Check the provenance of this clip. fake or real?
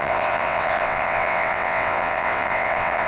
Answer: fake